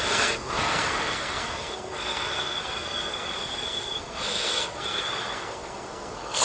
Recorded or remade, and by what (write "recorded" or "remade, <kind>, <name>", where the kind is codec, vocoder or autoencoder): remade, codec, SNAC